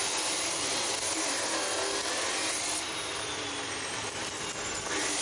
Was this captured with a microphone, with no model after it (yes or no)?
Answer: yes